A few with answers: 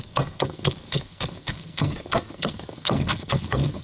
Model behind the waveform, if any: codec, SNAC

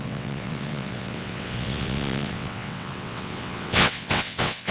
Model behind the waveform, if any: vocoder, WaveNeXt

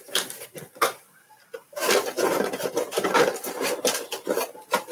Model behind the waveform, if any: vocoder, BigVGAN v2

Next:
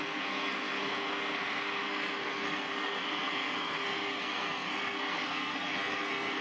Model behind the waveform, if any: codec, SNAC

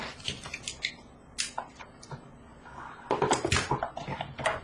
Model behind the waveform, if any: none